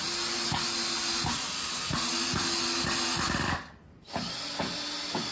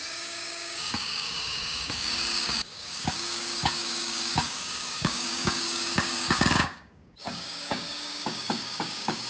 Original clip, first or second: first